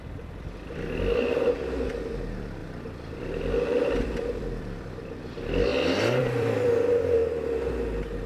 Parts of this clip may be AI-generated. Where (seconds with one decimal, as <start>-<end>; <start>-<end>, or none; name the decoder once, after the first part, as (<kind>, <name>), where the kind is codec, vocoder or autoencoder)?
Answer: 0.0-5.7 (vocoder, BigVGAN v2); 6.2-7.2